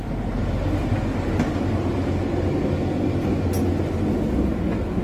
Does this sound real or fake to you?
real